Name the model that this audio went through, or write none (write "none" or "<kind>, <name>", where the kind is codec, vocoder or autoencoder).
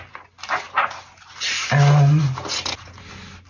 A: none